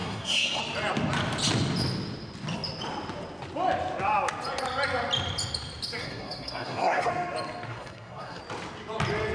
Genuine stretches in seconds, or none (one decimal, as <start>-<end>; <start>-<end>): 0.6-6.0; 7.1-7.7; 8.4-9.3